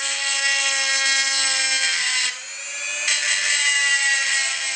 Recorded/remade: recorded